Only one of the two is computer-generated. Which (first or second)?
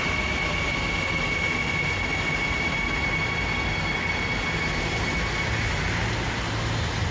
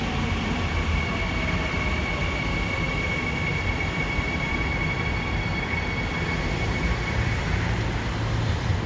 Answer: second